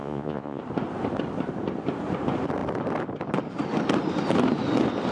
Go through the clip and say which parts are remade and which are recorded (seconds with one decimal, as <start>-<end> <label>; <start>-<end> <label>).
0.0-0.6 remade; 0.6-5.1 recorded